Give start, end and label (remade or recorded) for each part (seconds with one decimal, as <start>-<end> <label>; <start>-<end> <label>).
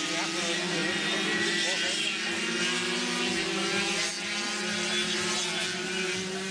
0.0-6.5 recorded